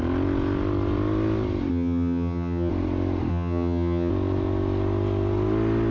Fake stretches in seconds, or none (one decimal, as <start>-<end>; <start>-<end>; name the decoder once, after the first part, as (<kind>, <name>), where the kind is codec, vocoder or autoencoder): 1.7-2.7 (vocoder, HiFi-GAN); 3.3-4.1